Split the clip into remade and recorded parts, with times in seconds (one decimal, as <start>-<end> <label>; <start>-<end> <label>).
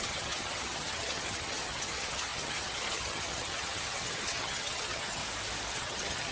0.0-5.2 remade; 5.2-5.7 recorded; 5.7-6.3 remade